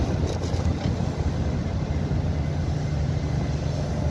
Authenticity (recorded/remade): recorded